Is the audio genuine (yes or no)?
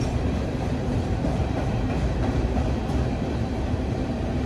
no